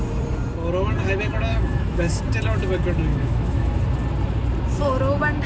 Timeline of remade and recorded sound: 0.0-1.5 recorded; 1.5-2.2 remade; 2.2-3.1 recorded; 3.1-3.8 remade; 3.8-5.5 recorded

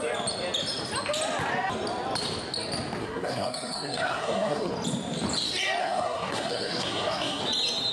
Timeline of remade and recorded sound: 0.0-3.0 recorded; 3.0-4.7 remade; 4.7-5.8 recorded; 5.8-7.4 remade; 7.4-7.9 recorded

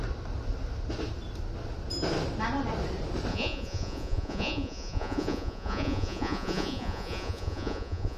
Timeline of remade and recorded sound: 0.0-3.3 recorded; 3.3-8.2 remade

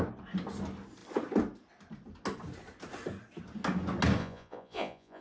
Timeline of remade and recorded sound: 0.0-4.2 recorded; 4.2-5.2 remade

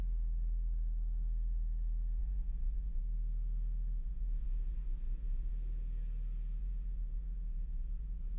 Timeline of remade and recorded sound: 0.0-2.2 recorded; 2.2-3.0 remade; 3.0-4.0 recorded; 4.0-5.5 remade; 5.5-6.6 recorded; 6.6-8.4 remade

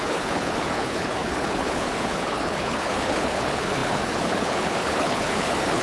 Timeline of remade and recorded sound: 0.0-5.8 remade